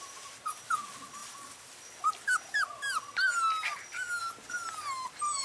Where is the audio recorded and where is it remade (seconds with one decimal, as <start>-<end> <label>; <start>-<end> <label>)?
0.0-5.4 recorded